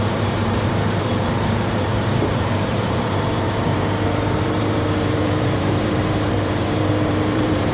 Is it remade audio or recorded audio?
remade